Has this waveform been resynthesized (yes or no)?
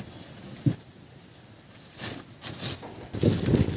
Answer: no